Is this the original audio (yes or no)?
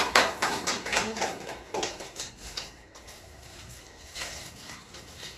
no